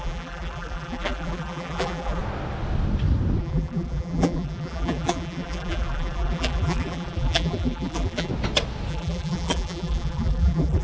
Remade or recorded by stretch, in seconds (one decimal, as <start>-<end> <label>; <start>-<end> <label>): 0.0-2.2 remade; 2.2-3.4 recorded; 3.4-8.3 remade; 8.3-8.9 recorded; 8.9-10.8 remade